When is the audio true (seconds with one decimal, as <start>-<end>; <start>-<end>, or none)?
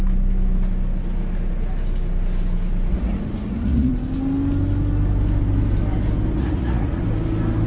0.0-2.9; 3.9-6.4; 7.0-7.7